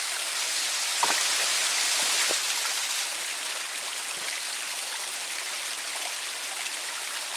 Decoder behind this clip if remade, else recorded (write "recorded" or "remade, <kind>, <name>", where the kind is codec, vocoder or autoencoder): recorded